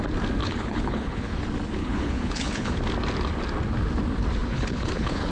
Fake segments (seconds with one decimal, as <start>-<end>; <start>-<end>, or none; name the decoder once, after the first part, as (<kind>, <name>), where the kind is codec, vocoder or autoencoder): 0.4-1.4 (codec, HILCodec); 1.8-2.8; 4.4-5.3